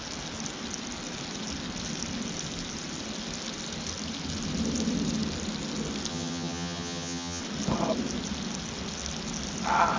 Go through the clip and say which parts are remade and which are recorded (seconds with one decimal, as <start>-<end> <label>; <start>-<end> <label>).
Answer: 0.0-6.1 recorded; 6.1-7.4 remade; 7.4-10.0 recorded